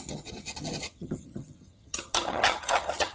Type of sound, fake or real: fake